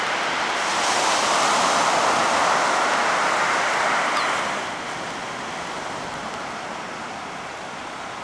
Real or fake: real